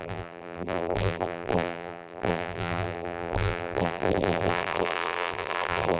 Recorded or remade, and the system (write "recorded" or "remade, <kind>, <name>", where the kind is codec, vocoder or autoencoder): remade, vocoder, BigVGAN v2